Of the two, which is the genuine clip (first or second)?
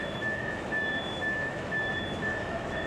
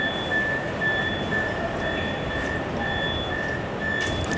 second